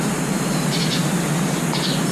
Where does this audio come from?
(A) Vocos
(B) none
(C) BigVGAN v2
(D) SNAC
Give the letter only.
B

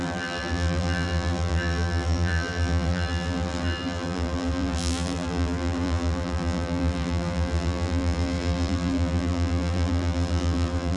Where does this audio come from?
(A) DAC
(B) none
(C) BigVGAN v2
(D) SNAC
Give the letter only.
C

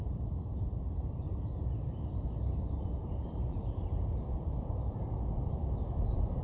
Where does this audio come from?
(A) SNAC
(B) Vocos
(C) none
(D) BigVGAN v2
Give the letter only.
D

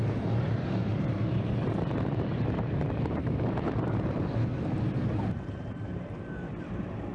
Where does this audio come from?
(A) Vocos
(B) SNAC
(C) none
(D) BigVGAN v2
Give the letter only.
D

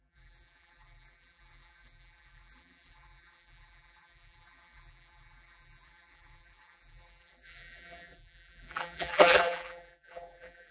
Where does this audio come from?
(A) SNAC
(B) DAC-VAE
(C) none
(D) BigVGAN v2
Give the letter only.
D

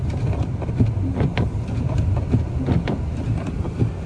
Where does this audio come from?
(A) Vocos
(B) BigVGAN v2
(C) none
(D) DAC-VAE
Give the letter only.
C